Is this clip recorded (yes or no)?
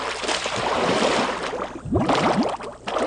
yes